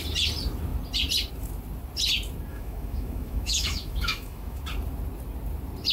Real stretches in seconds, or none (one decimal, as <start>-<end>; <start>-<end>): 0.0-2.5; 4.6-5.9